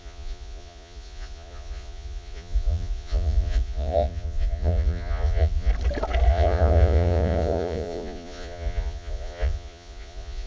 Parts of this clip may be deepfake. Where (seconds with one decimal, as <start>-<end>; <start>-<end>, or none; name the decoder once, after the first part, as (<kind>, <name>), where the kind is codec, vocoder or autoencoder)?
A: 0.0-5.7 (vocoder, Vocos); 6.3-10.5